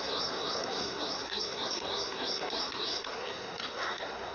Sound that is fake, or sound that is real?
fake